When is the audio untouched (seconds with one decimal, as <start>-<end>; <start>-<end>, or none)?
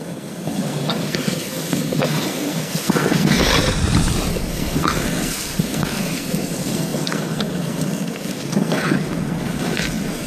3.5-4.3